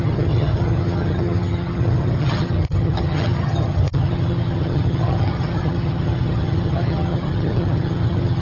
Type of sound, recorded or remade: remade